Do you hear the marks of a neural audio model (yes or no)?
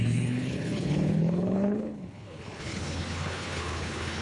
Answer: yes